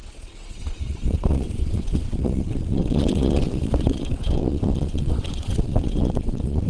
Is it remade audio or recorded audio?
remade